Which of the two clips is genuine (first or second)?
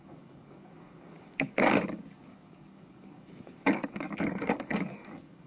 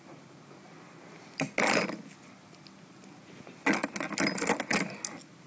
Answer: second